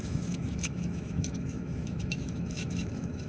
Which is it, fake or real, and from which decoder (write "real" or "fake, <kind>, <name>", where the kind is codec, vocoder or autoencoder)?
fake, autoencoder, DAC-VAE